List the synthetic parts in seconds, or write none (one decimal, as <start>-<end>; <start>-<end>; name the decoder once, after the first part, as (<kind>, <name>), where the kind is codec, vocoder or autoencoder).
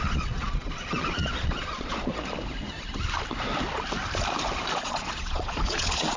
0.0-2.1 (vocoder, Vocos); 4.8-6.2